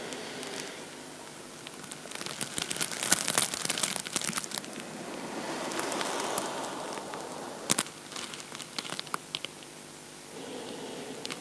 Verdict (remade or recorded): recorded